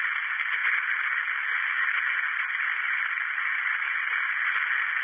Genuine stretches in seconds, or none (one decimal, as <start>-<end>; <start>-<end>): 0.0-5.0